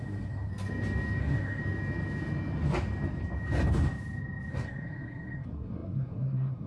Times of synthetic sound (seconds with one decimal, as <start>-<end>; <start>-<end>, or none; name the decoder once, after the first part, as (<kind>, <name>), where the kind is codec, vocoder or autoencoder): 0.0-0.5 (codec, SNAC); 1.2-1.6; 4.5-6.7